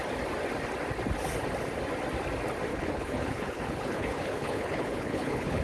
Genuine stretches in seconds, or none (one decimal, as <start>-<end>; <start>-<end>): 0.0-2.7